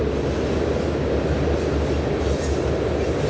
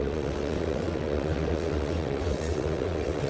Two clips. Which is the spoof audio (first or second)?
second